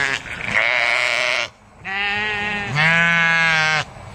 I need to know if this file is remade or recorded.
recorded